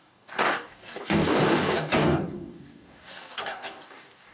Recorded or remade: remade